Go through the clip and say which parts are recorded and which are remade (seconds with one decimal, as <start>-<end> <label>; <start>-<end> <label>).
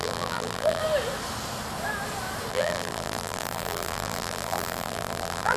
0.0-0.8 remade; 0.8-2.5 recorded; 2.5-5.6 remade